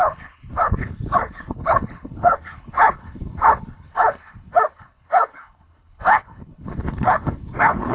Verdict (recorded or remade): remade